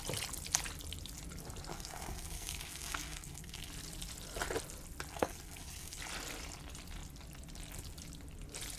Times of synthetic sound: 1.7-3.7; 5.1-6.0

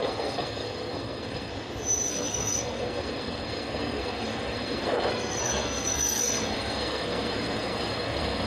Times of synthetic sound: 0.0-1.5; 2.1-8.5